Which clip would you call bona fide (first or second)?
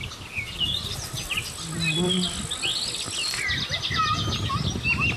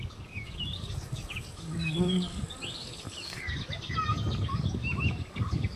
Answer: first